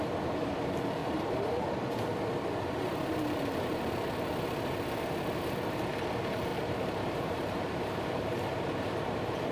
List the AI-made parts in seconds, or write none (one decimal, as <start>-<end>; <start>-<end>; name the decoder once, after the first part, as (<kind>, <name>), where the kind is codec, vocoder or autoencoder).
6.5-8.8 (vocoder, BigVGAN v2)